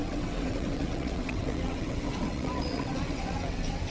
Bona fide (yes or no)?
no